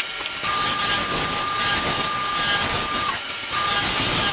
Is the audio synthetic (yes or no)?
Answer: no